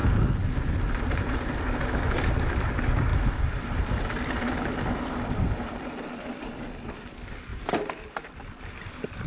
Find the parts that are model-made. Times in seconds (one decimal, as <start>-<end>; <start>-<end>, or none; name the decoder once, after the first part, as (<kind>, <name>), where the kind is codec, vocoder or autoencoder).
3.1-6.1 (vocoder, BigVGAN v2); 7.5-9.3